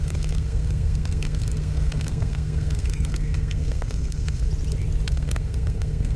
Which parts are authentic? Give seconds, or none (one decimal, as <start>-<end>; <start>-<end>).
4.5-5.1